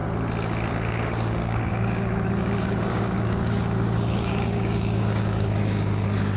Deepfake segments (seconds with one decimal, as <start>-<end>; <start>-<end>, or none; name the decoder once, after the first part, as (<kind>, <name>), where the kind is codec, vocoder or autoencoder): 0.7-6.4 (codec, DAC)